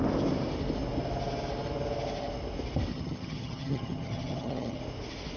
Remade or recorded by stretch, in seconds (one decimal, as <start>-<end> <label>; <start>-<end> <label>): 0.0-2.9 recorded; 2.9-4.8 remade; 4.8-5.4 recorded